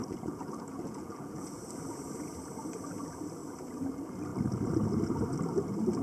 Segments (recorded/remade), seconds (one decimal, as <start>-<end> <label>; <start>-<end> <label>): 0.0-1.6 remade; 1.6-6.0 recorded